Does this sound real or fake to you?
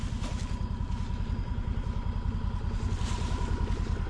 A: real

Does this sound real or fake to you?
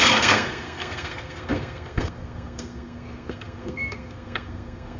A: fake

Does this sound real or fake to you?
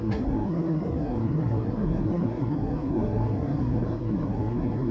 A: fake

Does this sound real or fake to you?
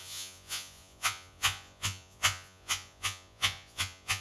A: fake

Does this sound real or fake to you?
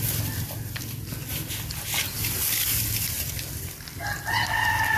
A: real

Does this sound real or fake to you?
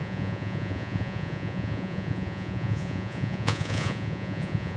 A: fake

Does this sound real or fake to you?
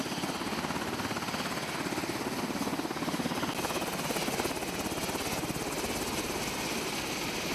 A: real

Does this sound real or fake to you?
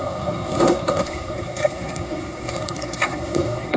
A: fake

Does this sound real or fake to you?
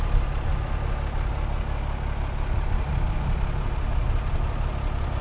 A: real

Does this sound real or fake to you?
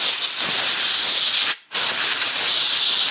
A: real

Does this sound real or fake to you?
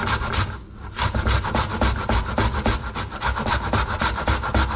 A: real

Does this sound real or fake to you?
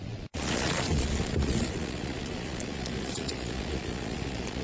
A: fake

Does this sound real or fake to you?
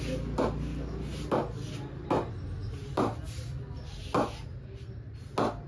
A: real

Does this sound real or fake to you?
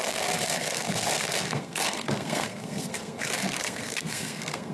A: fake